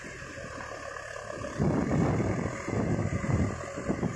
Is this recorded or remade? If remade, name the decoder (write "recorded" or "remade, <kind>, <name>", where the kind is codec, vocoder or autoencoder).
recorded